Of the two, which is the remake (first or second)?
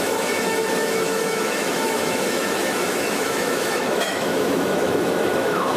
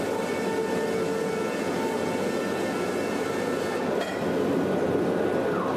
first